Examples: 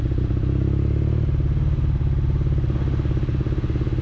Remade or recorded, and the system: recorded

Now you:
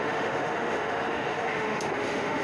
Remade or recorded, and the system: remade, autoencoder, DAC-VAE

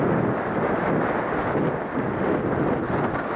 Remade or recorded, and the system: recorded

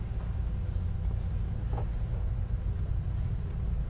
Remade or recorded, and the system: recorded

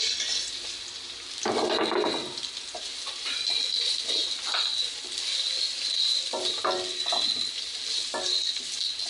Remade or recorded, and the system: recorded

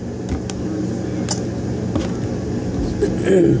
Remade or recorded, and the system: recorded